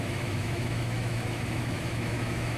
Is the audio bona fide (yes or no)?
no